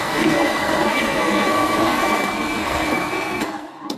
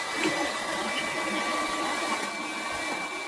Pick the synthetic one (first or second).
first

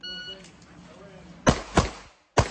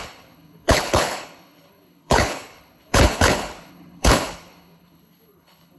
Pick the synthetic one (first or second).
second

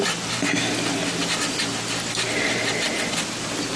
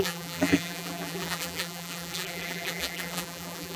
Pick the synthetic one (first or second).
second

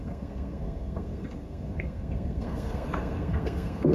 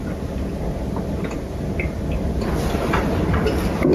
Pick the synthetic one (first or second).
first